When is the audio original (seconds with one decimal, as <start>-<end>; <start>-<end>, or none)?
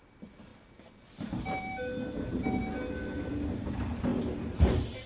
0.0-5.1